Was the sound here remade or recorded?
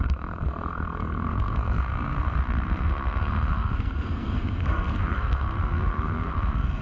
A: remade